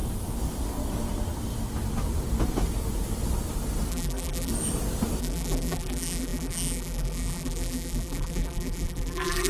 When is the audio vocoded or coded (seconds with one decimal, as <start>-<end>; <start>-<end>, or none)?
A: 3.9-4.5; 5.2-9.5